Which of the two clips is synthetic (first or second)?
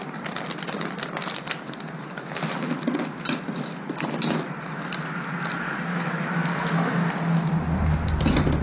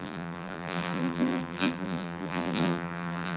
second